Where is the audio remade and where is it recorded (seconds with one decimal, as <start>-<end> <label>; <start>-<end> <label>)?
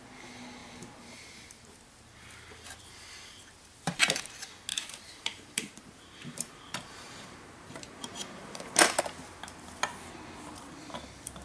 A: 0.0-4.7 recorded; 4.7-9.0 remade; 9.0-11.4 recorded